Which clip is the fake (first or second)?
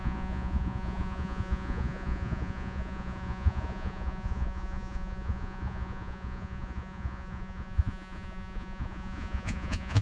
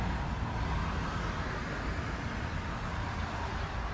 first